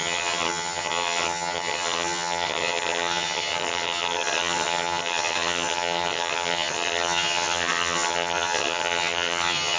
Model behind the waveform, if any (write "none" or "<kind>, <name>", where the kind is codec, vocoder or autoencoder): vocoder, HiFi-GAN